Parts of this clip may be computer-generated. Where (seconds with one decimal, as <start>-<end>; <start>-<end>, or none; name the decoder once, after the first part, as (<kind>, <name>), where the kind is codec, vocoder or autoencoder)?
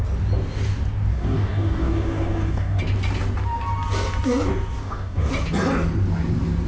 1.1-2.8 (codec, DAC); 4.8-5.3